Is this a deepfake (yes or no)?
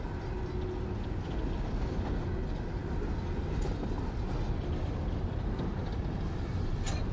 no